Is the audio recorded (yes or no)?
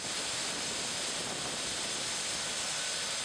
yes